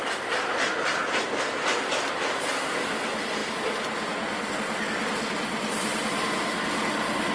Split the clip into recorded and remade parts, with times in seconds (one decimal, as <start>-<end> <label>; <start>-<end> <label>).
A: 0.0-7.3 recorded